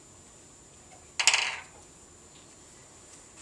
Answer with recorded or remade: recorded